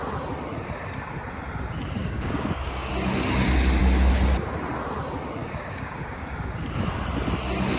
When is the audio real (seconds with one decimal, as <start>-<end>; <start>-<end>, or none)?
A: 0.0-2.0; 2.9-5.4; 6.7-7.8